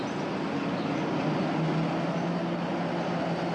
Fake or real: real